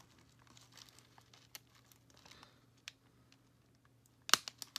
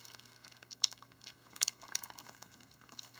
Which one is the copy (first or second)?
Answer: second